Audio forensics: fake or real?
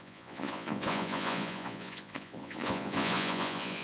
fake